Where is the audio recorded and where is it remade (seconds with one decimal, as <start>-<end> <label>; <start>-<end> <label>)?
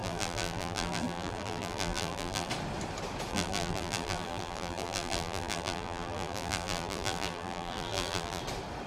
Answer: 0.0-2.5 remade; 2.5-3.3 recorded; 3.3-8.4 remade; 8.4-8.9 recorded